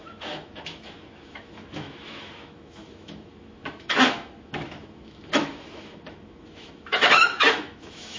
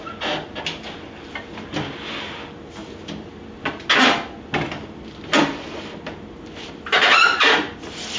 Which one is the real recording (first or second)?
second